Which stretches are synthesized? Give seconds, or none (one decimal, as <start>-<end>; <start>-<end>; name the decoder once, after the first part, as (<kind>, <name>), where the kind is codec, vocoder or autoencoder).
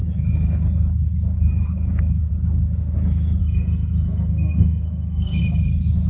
3.4-5.4 (codec, SNAC)